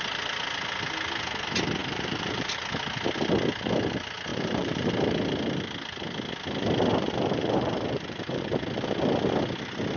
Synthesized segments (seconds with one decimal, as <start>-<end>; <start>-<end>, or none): 1.8-2.5; 4.3-4.9; 6.9-8.4